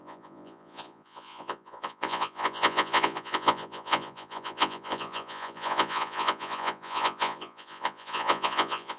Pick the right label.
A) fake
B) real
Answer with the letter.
A